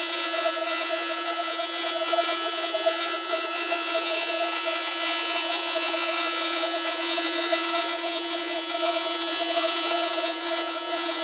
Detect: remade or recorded remade